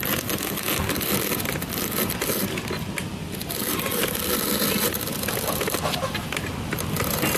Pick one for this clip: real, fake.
real